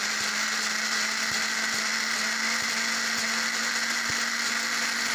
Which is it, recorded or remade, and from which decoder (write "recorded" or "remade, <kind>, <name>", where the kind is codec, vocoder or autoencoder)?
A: recorded